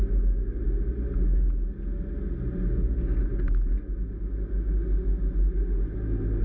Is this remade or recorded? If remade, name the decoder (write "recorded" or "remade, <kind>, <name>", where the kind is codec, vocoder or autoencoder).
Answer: recorded